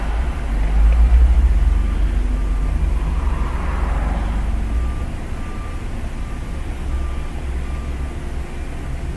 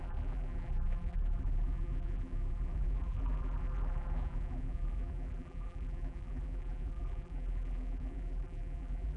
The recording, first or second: first